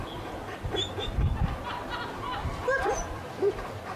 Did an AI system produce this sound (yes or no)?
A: yes